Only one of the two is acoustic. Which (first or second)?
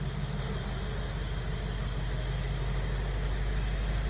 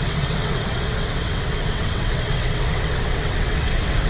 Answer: first